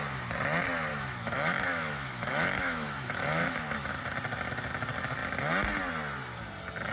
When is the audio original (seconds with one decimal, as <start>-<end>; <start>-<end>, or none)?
0.0-0.9; 4.0-6.9